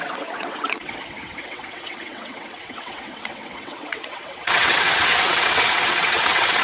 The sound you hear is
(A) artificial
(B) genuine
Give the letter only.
A